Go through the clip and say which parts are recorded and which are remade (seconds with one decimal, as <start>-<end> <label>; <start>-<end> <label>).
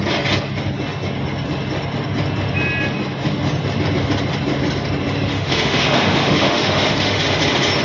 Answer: 0.0-5.3 recorded; 5.3-7.2 remade; 7.2-7.8 recorded